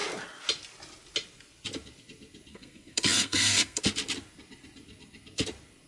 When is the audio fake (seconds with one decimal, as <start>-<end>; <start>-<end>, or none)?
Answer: 2.5-3.8